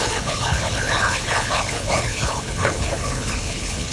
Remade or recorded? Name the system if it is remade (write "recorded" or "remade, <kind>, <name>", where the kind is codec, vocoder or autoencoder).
remade, codec, HILCodec